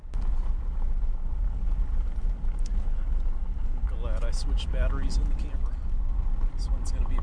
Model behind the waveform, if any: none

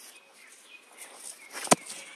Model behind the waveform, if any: none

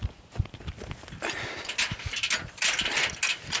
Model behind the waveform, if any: none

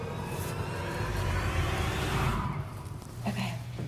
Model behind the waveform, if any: vocoder, BigVGAN v2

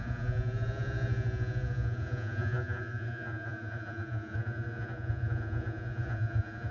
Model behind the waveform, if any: vocoder, Vocos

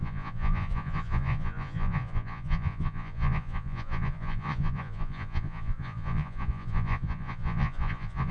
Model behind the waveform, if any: vocoder, Vocos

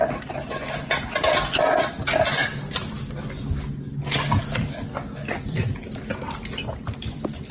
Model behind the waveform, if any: none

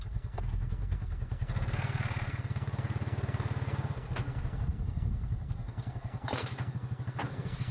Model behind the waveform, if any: codec, SNAC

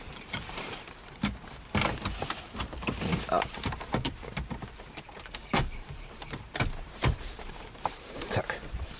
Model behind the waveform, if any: vocoder, BigVGAN v2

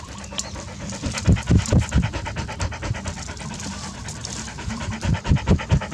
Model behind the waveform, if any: none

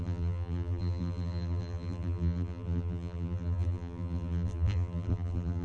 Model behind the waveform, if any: vocoder, BigVGAN v2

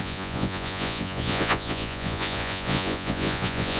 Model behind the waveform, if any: vocoder, Vocos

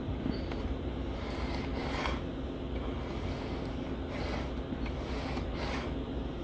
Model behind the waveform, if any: none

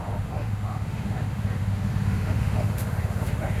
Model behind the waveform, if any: autoencoder, DAC-VAE